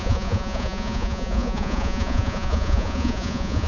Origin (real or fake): fake